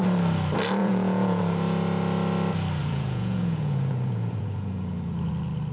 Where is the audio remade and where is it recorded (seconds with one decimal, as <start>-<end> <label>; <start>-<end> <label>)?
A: 0.0-0.8 recorded; 0.8-1.4 remade; 1.4-2.8 recorded; 2.8-5.3 remade; 5.3-5.7 recorded